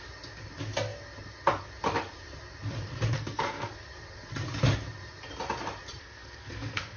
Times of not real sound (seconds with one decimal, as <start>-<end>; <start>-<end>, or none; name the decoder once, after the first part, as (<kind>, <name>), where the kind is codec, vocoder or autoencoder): 3.1-3.7 (codec, SNAC); 6.0-7.0